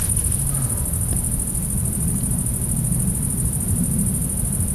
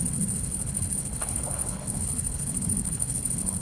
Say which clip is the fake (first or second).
second